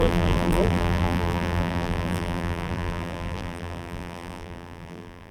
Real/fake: fake